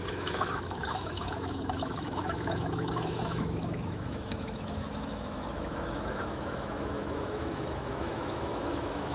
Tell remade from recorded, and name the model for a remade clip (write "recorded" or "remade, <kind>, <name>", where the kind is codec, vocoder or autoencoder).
remade, autoencoder, DAC-VAE